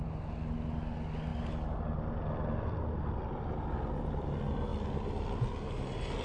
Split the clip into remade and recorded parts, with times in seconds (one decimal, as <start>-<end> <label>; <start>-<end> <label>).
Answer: 0.0-6.2 recorded